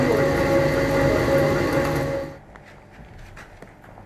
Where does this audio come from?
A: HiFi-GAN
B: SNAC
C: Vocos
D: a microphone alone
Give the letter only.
D